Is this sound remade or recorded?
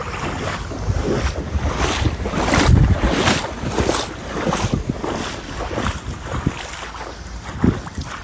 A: recorded